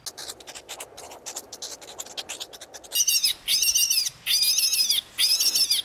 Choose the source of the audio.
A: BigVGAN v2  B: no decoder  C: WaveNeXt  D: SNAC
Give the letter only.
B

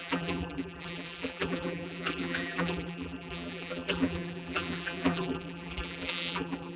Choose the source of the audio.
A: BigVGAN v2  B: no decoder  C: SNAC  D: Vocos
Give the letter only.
A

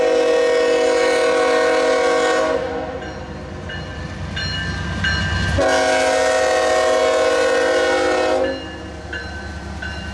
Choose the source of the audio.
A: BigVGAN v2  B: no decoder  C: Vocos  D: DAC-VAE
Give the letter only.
B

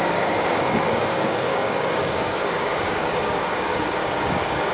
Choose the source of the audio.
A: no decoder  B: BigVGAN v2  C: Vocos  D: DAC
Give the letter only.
D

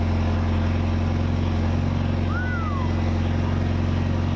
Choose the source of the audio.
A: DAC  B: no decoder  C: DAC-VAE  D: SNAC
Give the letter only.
B